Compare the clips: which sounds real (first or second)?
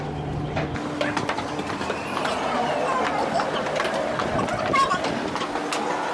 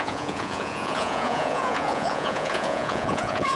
first